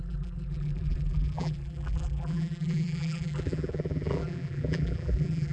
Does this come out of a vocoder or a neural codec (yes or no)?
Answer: yes